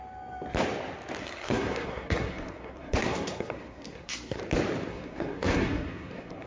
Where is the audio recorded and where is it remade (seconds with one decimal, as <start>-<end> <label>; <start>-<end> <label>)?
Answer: 0.0-1.2 recorded; 1.2-4.4 remade; 4.4-4.9 recorded; 4.9-6.5 remade